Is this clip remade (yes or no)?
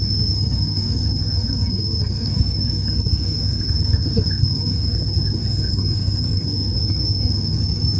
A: yes